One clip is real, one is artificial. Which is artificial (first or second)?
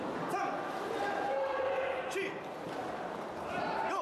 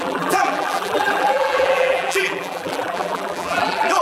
second